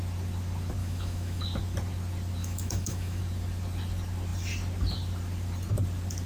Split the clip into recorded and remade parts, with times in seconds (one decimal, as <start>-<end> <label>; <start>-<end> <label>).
0.0-0.8 recorded; 0.8-1.4 remade; 1.4-2.4 recorded; 2.4-3.2 remade; 3.2-6.3 recorded